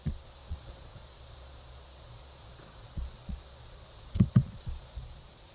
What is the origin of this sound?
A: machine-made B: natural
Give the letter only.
A